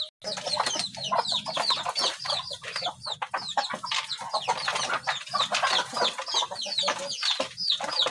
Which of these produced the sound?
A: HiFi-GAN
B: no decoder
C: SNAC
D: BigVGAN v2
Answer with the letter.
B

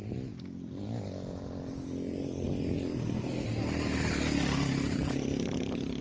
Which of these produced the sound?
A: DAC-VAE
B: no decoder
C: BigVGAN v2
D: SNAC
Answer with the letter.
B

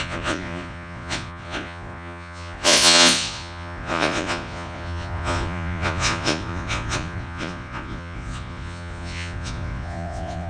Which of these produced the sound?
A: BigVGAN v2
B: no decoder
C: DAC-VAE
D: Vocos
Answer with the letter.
D